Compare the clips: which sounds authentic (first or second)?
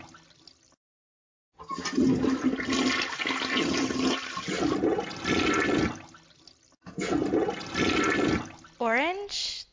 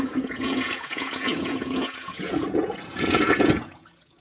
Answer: first